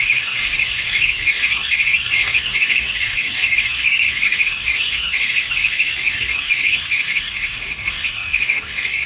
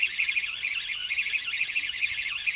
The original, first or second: second